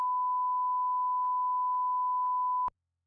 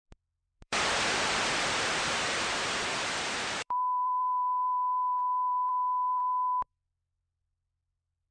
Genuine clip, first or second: first